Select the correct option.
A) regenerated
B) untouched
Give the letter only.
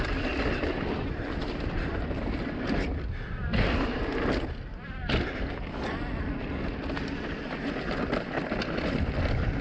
B